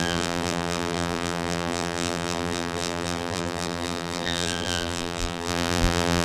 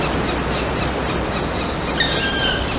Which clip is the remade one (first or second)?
first